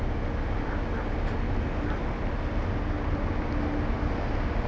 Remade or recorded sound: recorded